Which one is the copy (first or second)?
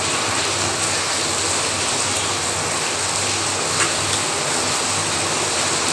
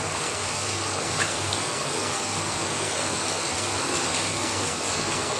second